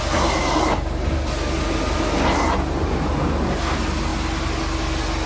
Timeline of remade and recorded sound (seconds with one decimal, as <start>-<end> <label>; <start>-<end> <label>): 0.0-5.3 recorded